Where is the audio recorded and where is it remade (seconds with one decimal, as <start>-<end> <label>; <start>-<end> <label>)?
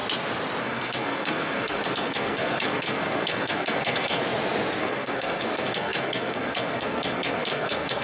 0.0-0.6 recorded; 0.6-4.2 remade; 4.2-4.8 recorded; 4.8-8.0 remade